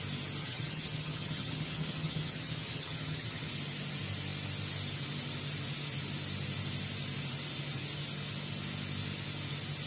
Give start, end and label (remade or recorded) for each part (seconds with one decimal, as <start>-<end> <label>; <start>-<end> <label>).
0.0-0.4 recorded; 0.4-3.5 remade; 3.5-9.9 recorded